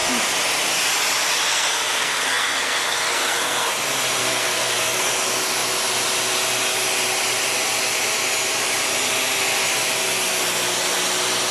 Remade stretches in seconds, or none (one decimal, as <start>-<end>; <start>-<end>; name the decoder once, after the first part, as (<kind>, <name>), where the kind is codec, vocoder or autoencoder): 1.5-3.7 (codec, SNAC); 4.2-5.1